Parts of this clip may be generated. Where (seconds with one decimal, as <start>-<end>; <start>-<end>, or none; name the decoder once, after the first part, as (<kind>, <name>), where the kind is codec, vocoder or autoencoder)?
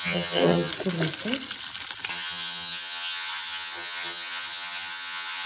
0.0-0.7 (vocoder, HiFi-GAN); 2.1-5.5